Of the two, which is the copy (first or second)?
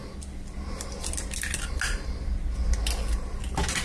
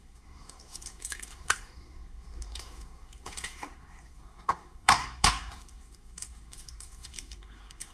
second